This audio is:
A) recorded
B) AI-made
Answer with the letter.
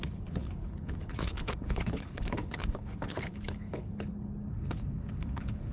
B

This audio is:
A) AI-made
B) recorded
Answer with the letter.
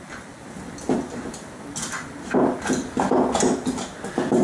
B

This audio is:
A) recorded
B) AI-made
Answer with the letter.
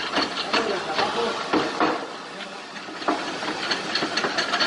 A